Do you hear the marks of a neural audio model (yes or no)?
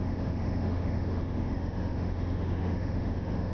yes